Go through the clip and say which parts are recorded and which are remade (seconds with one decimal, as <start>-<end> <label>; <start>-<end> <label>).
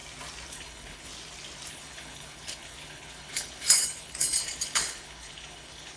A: 0.0-0.5 recorded; 0.5-1.1 remade; 1.1-1.7 recorded; 1.7-6.0 remade